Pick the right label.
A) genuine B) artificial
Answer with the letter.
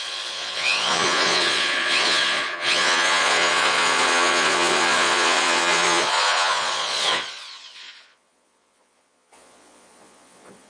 B